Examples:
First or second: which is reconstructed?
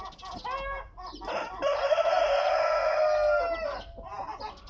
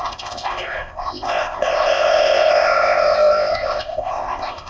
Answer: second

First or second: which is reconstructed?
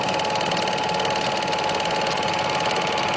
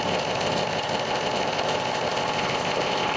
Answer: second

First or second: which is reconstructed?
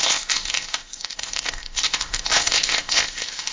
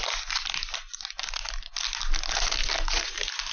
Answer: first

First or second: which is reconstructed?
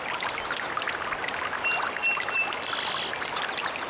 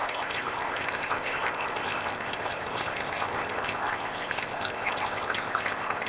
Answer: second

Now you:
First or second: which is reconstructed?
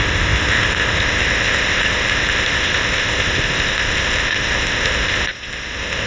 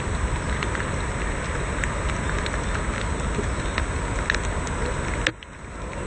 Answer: first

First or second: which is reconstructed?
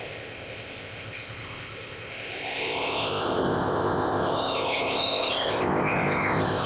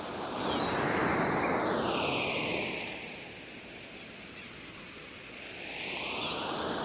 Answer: first